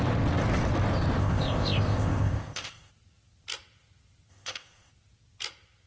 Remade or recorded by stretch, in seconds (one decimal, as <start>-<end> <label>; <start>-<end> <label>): 0.0-1.2 recorded; 1.2-2.9 remade; 2.9-4.3 recorded; 4.3-4.9 remade; 4.9-5.9 recorded